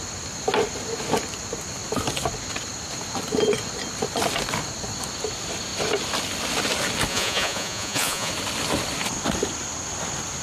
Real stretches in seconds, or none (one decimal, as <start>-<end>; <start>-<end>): 0.0-7.1; 8.3-10.4

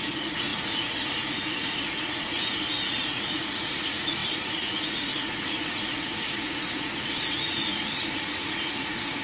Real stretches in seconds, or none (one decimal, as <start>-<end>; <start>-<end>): none

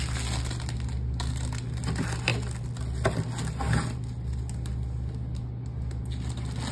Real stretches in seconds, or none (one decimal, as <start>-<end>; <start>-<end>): 0.0-6.7

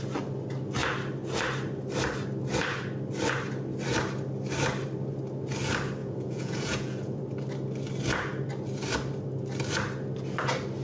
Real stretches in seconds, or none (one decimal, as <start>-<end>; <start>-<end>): 0.0-6.0; 7.2-10.8